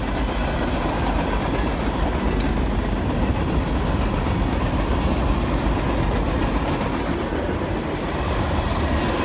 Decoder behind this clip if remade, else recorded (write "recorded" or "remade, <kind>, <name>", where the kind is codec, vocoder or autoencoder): recorded